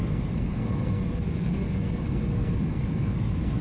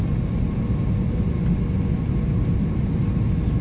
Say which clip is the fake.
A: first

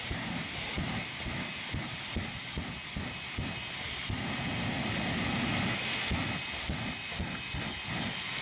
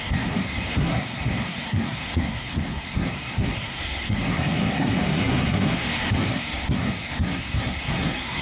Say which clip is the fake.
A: second